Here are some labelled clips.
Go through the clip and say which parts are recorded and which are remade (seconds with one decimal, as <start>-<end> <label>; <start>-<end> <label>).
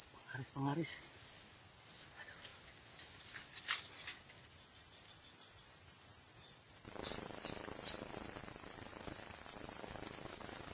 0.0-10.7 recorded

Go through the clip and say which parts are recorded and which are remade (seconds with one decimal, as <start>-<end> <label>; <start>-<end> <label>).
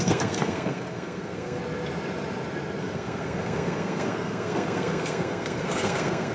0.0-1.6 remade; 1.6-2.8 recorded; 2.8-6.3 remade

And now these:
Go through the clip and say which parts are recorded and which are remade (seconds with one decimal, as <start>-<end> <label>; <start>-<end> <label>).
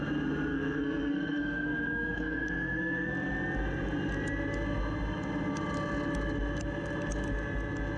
0.0-0.5 recorded; 0.5-3.1 remade; 3.1-8.0 recorded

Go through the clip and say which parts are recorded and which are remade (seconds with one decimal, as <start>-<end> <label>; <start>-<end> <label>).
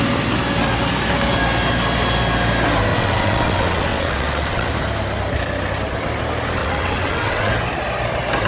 0.0-2.9 recorded; 2.9-4.7 remade; 4.7-6.6 recorded; 6.6-7.5 remade; 7.5-8.5 recorded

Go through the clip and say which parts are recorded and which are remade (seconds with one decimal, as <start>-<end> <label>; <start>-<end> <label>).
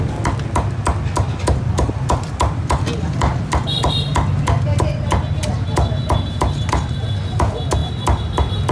0.0-8.7 recorded